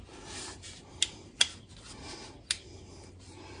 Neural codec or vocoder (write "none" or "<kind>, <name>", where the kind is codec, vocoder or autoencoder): none